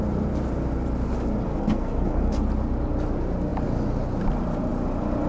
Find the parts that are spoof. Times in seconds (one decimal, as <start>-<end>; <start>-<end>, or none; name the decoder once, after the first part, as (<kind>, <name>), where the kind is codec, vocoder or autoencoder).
1.5-2.4 (codec, SNAC)